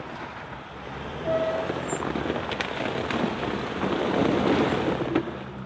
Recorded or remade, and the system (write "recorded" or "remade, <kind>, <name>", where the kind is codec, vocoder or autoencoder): recorded